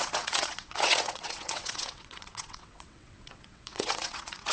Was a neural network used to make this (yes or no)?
yes